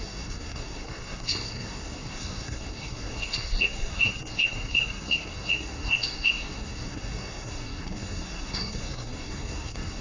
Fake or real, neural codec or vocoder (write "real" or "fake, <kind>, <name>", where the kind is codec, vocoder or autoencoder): fake, codec, SNAC